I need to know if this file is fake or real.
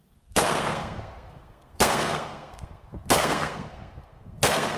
fake